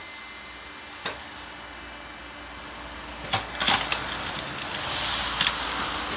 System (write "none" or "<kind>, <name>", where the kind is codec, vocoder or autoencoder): none